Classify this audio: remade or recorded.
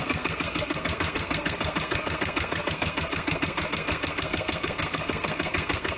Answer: remade